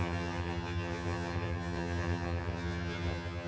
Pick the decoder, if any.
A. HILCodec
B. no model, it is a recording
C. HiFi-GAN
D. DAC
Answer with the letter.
C